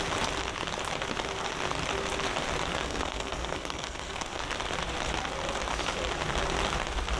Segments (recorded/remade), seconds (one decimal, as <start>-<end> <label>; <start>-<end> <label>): 0.0-2.7 recorded; 2.7-4.4 remade; 4.4-7.2 recorded